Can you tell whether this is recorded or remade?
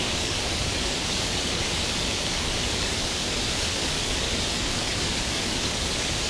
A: remade